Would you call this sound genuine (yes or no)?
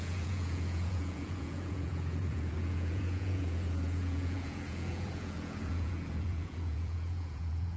no